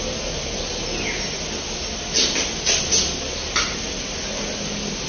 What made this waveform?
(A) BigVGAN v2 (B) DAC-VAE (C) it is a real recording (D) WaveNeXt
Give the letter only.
C